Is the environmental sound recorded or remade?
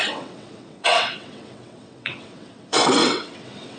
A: remade